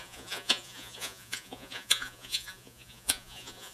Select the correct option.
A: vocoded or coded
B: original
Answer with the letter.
A